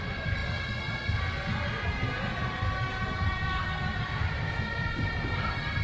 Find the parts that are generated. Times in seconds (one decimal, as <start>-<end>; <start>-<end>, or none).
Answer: 3.3-5.2